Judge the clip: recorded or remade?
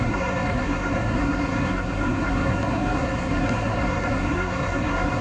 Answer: remade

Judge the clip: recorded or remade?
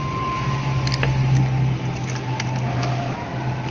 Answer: recorded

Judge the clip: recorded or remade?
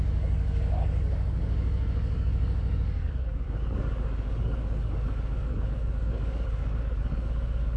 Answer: remade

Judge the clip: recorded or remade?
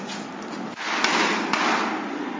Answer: recorded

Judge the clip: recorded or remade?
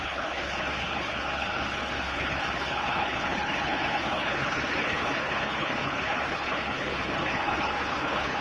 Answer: remade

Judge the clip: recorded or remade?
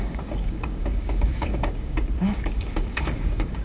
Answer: remade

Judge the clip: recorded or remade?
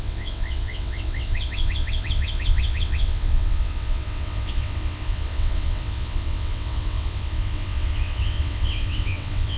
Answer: remade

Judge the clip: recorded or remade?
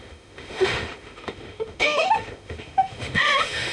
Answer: remade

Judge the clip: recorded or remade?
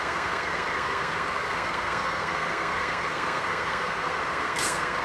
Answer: remade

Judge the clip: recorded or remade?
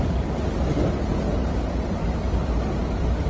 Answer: recorded